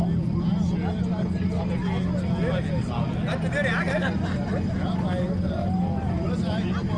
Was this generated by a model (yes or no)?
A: no